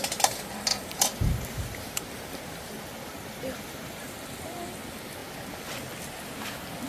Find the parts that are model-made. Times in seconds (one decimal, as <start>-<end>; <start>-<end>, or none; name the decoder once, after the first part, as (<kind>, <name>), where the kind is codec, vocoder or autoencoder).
0.7-4.8 (vocoder, BigVGAN v2)